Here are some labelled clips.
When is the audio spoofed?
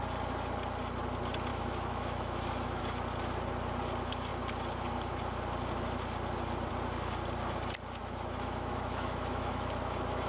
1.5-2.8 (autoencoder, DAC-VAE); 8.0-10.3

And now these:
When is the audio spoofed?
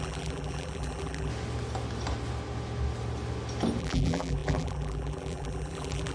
0.0-1.3 (vocoder, BigVGAN v2); 3.8-6.1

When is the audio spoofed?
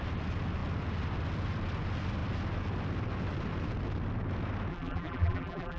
4.7-5.8 (vocoder, BigVGAN v2)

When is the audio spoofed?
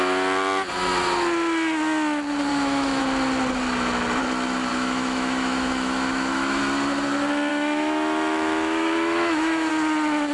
2.5-3.0 (autoencoder, DAC-VAE); 4.7-6.6; 7.5-9.7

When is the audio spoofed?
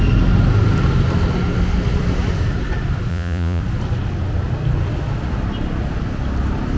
3.1-3.6 (vocoder, Vocos)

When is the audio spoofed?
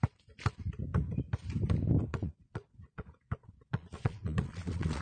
2.1-5.0 (vocoder, Vocos)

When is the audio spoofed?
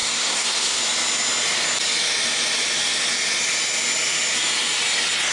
0.0-0.8 (codec, SNAC)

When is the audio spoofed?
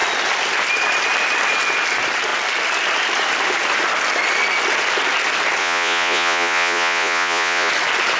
5.6-7.7 (vocoder, Vocos)